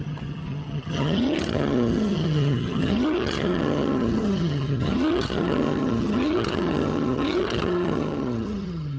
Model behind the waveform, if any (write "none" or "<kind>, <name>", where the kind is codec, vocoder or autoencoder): vocoder, HiFi-GAN